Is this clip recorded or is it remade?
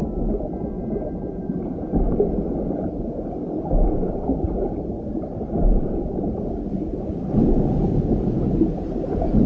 recorded